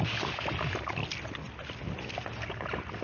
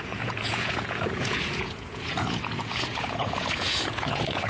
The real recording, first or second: first